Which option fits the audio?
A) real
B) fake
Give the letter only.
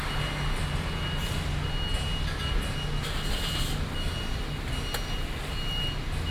A